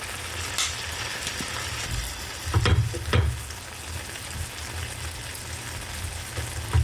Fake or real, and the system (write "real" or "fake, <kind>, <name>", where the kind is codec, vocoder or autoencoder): real